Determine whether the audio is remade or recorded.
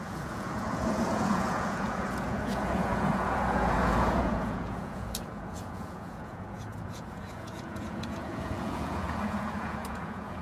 remade